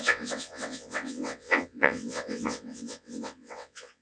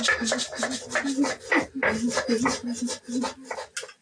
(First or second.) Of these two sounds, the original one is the second